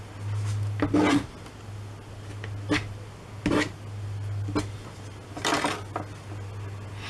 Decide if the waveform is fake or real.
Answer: real